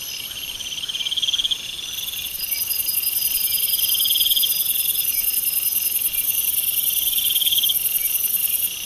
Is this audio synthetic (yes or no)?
no